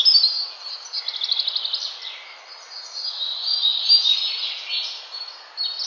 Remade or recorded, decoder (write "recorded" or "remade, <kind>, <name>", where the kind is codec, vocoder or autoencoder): recorded